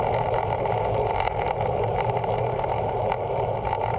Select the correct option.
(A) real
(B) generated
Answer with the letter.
B